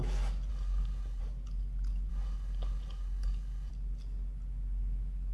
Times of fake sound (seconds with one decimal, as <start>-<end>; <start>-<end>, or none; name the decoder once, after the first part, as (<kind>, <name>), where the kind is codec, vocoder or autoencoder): 0.5-1.2 (codec, HILCodec); 2.1-3.7